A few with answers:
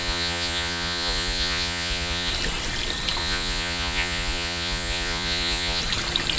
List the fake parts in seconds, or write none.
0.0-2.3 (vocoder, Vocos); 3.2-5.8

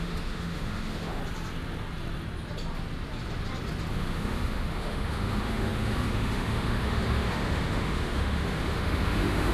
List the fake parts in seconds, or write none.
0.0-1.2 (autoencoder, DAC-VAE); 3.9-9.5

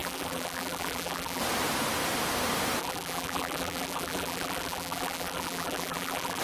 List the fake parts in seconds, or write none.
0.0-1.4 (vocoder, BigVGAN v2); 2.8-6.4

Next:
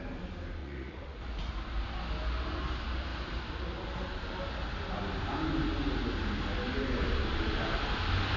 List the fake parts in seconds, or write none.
0.6-1.5 (vocoder, Vocos)

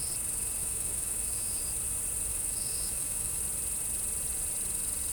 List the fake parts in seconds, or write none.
0.6-1.6 (autoencoder, DAC-VAE); 2.3-3.4